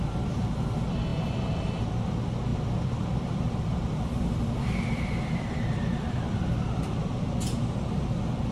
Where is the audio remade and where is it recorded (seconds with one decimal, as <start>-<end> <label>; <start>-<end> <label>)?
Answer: 0.0-1.1 recorded; 1.1-1.8 remade; 1.8-2.5 recorded; 2.5-6.8 remade; 6.8-8.5 recorded

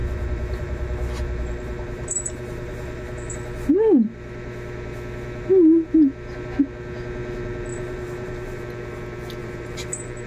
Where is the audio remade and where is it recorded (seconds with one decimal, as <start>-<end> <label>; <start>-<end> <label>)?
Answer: 0.0-3.3 remade; 3.3-7.7 recorded; 7.7-8.6 remade; 8.6-9.4 recorded; 9.4-10.3 remade